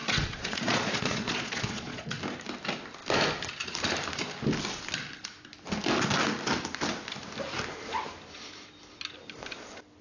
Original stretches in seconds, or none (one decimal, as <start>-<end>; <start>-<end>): 2.2-10.0